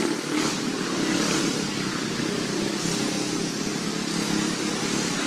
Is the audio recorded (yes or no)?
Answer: yes